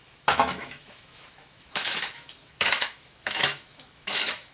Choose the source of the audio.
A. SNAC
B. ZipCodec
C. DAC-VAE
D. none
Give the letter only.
C